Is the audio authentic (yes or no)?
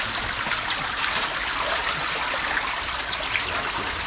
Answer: yes